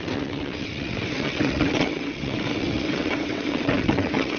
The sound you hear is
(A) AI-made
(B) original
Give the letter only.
A